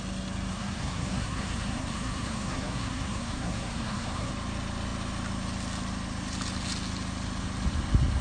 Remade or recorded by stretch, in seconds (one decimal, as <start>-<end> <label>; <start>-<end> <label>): 0.0-0.5 recorded; 0.5-4.3 remade; 4.3-8.2 recorded